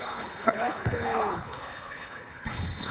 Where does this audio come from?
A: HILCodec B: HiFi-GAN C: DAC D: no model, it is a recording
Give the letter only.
A